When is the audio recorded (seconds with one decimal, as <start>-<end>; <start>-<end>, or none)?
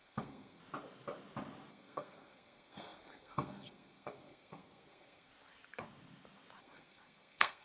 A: 0.6-1.7; 5.3-6.6